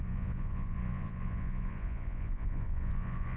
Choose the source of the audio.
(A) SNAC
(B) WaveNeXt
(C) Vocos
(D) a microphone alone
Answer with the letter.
C